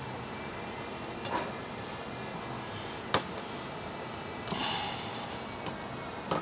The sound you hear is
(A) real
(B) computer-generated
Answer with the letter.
A